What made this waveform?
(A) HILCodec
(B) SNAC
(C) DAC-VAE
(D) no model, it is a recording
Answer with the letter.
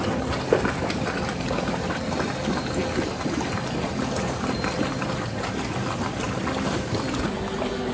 D